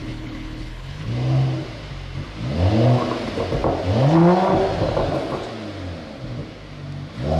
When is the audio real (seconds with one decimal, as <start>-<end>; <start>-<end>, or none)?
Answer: 1.1-7.4